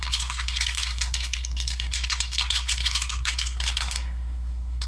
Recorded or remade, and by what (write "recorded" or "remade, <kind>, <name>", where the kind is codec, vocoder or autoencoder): remade, codec, SNAC